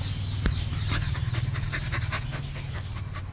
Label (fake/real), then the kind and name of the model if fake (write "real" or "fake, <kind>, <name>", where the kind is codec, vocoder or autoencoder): real